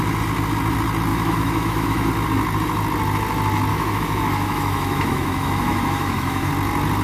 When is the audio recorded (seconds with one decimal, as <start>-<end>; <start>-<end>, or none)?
0.0-1.1; 2.1-3.7; 6.5-7.0